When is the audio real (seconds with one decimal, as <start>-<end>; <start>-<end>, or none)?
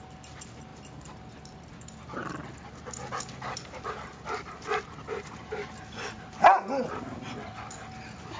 0.0-8.4